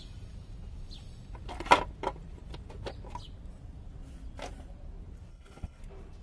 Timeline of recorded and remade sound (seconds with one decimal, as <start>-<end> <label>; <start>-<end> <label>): 0.0-5.3 recorded; 5.3-5.8 remade; 5.8-6.2 recorded

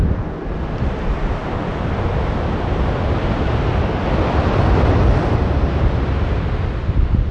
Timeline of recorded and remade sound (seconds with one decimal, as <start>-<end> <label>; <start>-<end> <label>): 0.0-7.3 recorded

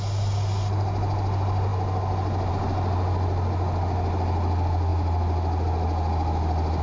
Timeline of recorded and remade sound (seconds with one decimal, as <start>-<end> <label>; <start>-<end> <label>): 0.0-6.8 recorded

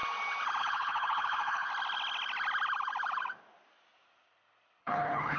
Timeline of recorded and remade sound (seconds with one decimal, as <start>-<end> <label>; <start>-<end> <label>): 0.0-0.6 recorded; 0.6-1.7 remade; 1.7-4.8 recorded; 4.8-5.4 remade

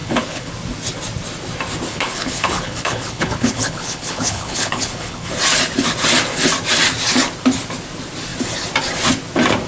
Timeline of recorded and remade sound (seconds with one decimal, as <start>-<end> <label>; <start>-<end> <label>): 0.0-0.5 remade; 0.5-1.9 recorded; 1.9-5.3 remade; 5.3-9.7 recorded

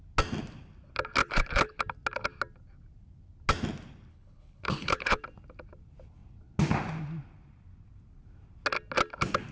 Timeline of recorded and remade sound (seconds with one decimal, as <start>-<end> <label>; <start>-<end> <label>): 0.0-1.2 recorded; 1.2-1.8 remade; 1.8-4.1 recorded; 4.1-5.2 remade; 5.2-9.5 recorded